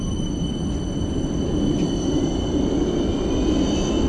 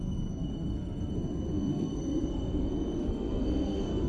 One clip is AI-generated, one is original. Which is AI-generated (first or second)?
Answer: second